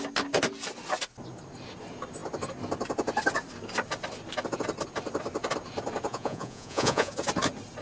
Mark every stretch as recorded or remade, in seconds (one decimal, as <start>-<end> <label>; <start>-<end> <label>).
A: 0.0-6.1 recorded; 6.1-7.1 remade; 7.1-7.8 recorded